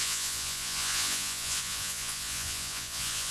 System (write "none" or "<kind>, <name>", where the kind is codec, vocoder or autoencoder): vocoder, Vocos